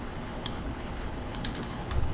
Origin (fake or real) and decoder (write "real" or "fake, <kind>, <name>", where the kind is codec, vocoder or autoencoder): fake, codec, HILCodec